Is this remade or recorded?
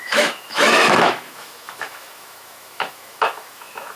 remade